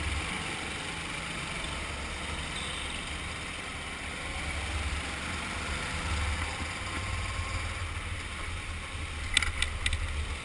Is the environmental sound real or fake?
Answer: real